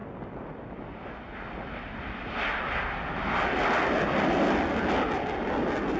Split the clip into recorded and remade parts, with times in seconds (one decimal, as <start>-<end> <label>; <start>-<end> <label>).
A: 0.0-6.0 recorded